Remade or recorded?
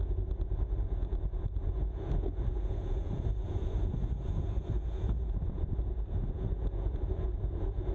remade